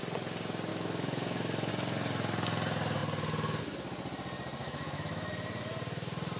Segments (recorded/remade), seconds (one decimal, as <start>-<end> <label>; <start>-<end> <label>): 0.0-0.7 recorded; 0.7-1.7 remade; 1.7-4.6 recorded; 4.6-5.3 remade; 5.3-6.4 recorded